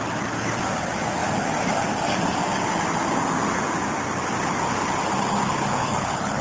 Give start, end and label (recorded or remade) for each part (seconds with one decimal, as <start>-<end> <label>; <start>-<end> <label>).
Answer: 0.0-5.8 recorded; 5.8-6.4 remade